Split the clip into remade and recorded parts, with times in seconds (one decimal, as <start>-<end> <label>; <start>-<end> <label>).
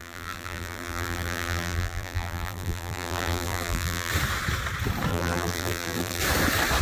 0.0-4.1 remade; 4.1-5.1 recorded; 5.1-6.2 remade; 6.2-6.8 recorded